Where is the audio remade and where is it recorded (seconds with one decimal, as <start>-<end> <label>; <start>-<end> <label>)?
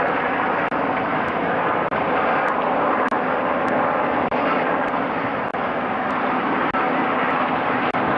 0.0-8.2 recorded